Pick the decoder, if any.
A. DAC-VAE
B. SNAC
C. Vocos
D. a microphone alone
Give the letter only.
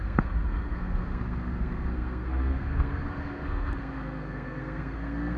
B